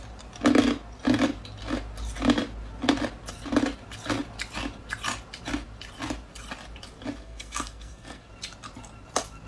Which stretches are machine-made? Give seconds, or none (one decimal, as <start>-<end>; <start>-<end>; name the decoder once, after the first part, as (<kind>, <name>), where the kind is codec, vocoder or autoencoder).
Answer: 7.2-8.3 (codec, SNAC)